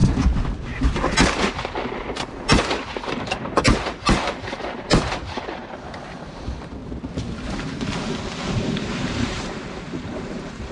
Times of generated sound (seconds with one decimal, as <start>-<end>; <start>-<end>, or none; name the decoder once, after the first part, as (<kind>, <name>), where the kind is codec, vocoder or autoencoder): 1.9-6.8 (vocoder, BigVGAN v2); 8.5-10.7